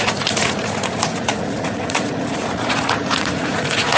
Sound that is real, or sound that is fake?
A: fake